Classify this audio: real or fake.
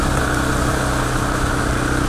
real